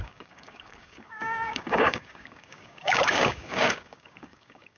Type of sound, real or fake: fake